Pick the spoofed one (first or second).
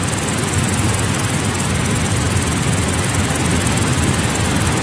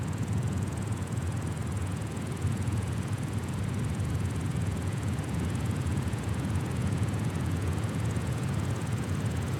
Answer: second